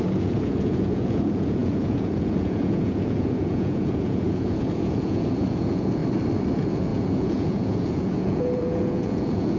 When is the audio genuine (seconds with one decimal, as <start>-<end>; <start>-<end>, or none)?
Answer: 6.0-6.5